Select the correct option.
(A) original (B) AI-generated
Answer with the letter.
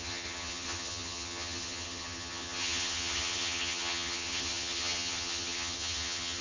B